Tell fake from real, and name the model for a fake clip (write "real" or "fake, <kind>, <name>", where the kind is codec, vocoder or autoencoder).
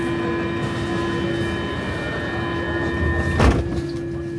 real